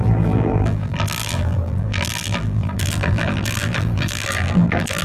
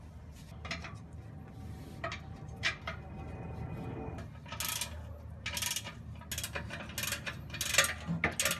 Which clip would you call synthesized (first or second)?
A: first